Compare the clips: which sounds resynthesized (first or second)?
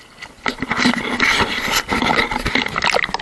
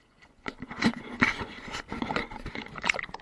second